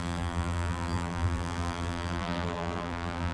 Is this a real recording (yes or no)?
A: no